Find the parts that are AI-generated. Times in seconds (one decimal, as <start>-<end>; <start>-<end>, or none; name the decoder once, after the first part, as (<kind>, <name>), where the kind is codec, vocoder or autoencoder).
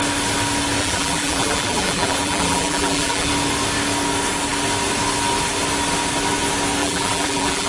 0.8-3.3 (vocoder, BigVGAN v2); 6.8-7.7